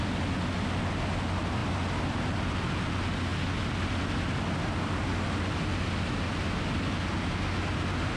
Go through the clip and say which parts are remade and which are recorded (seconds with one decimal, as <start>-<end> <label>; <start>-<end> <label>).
0.0-8.2 recorded